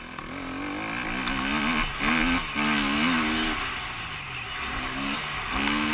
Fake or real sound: real